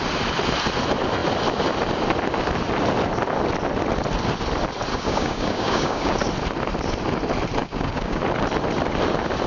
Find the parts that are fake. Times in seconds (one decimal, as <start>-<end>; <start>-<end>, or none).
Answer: 4.9-6.1; 7.6-8.2